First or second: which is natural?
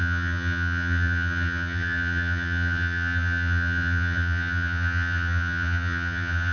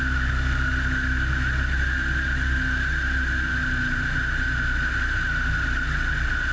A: second